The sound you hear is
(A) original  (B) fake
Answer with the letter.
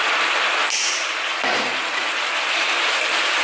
A